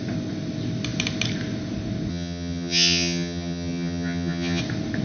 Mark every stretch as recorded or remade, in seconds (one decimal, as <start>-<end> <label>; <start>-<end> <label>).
0.0-2.1 recorded; 2.1-4.6 remade; 4.6-5.0 recorded